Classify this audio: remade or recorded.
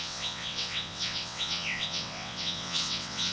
remade